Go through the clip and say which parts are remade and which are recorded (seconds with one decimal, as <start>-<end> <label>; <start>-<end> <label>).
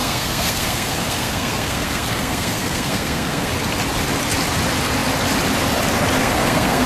0.0-3.5 remade; 3.5-6.2 recorded; 6.2-6.9 remade